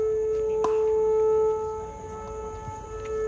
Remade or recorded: recorded